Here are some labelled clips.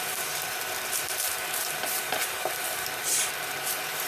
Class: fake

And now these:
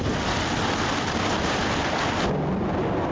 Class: real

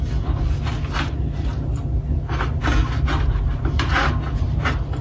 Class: real